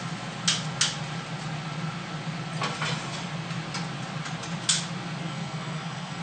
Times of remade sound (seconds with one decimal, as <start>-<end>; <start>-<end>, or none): 5.2-6.2